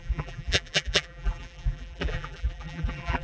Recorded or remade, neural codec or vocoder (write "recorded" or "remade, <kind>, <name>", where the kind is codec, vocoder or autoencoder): remade, vocoder, BigVGAN v2